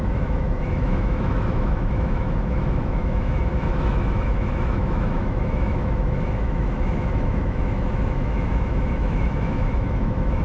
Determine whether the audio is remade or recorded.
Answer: remade